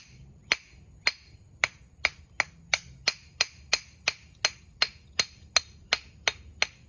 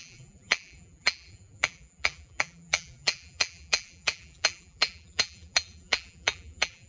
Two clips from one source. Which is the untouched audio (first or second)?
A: first